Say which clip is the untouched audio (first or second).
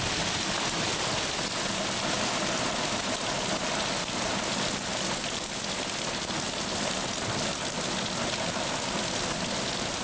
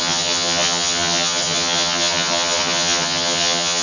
first